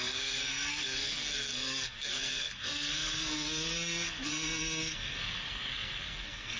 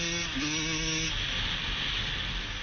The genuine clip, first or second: second